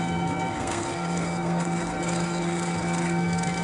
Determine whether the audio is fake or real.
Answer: fake